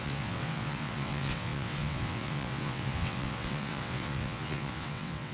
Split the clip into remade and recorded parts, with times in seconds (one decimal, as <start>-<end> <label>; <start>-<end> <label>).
0.0-5.3 remade